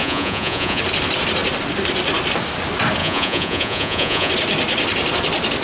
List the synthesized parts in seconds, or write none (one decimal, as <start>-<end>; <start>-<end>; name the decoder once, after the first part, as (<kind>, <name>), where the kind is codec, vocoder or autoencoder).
0.0-0.8 (vocoder, Vocos); 3.0-4.3